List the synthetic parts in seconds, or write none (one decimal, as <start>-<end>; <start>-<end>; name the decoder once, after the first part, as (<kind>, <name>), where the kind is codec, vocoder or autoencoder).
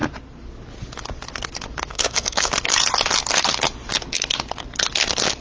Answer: 1.9-2.5 (codec, SNAC)